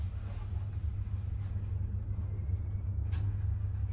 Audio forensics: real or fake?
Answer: real